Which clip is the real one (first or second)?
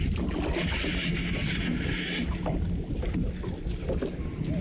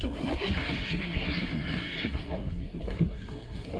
first